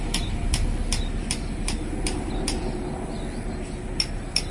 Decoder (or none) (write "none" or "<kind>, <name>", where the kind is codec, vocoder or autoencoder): none